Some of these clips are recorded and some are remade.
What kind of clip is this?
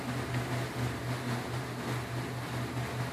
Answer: recorded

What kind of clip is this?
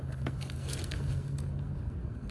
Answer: remade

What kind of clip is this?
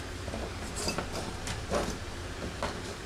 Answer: recorded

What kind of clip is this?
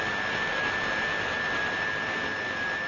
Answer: recorded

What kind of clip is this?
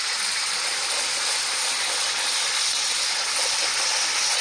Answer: recorded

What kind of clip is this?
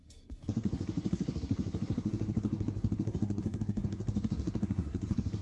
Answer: remade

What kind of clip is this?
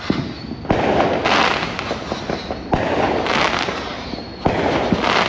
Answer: recorded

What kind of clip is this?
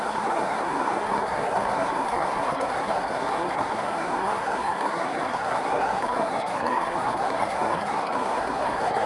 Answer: remade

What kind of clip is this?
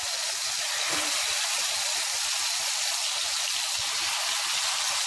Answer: recorded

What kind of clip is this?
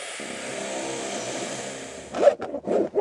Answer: recorded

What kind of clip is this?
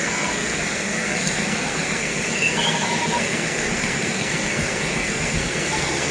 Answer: remade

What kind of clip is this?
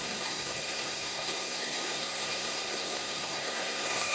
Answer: remade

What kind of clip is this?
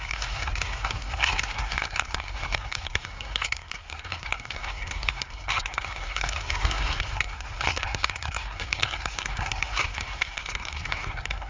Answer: remade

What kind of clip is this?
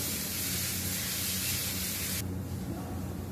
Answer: recorded